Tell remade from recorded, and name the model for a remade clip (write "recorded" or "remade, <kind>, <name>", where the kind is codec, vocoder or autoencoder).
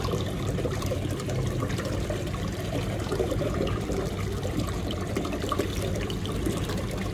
remade, vocoder, BigVGAN v2